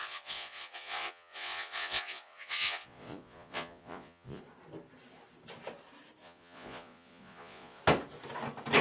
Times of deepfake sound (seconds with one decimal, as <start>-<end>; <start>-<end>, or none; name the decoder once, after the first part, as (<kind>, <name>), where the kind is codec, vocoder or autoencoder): 0.0-4.4 (vocoder, Vocos); 6.2-7.8